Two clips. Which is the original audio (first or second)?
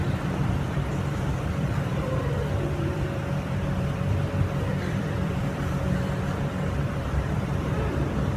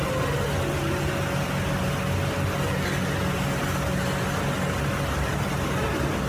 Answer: second